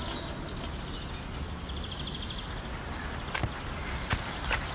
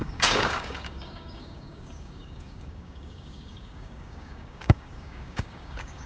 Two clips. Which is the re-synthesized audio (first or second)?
second